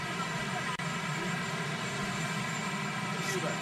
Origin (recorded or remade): recorded